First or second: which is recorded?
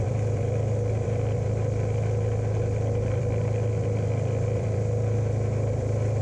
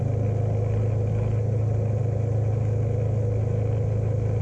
second